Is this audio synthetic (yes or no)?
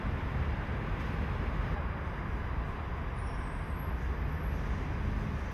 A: no